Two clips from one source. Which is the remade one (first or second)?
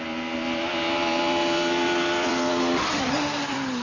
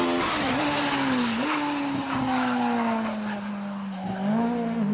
first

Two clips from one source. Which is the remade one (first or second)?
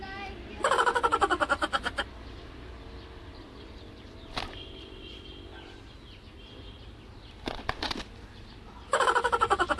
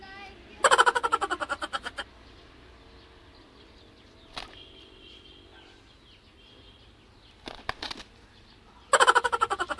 first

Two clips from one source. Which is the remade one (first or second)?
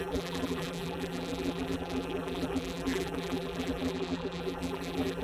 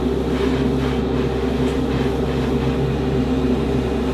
first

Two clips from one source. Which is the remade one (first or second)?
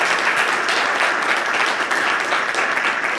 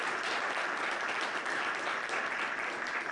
second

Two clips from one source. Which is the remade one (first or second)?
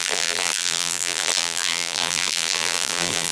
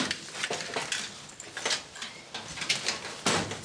first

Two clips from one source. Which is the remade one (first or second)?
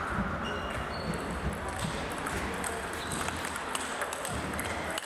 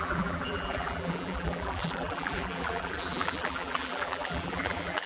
second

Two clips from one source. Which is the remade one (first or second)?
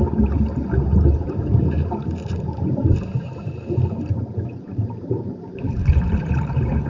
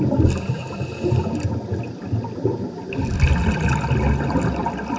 first